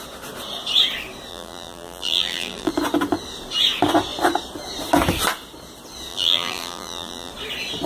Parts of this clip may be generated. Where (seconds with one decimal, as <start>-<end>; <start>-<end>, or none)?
1.3-2.7; 6.1-7.3